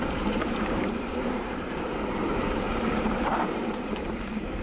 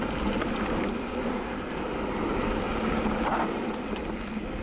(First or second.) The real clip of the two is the second